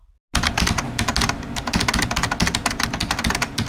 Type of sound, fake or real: real